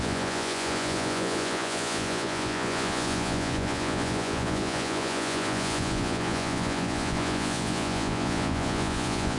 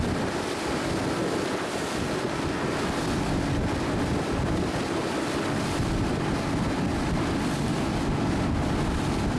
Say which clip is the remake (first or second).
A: first